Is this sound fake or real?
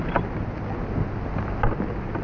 real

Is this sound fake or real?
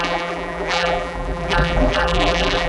fake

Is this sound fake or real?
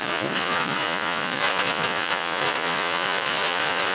fake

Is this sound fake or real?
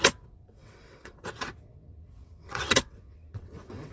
fake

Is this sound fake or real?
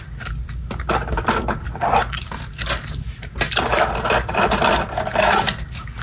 real